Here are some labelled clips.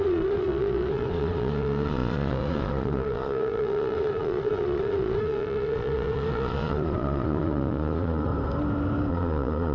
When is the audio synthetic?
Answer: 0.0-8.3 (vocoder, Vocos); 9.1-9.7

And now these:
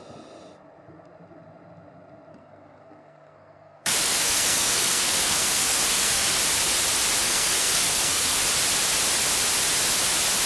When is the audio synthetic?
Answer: 2.3-6.4 (codec, SNAC); 7.2-8.4

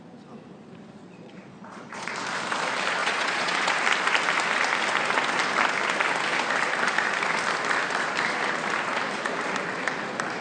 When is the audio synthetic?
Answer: 1.0-2.1 (vocoder, Vocos); 3.0-3.7